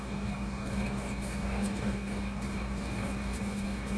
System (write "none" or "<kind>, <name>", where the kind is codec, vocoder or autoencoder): codec, DAC